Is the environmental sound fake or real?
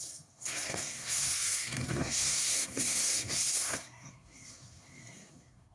fake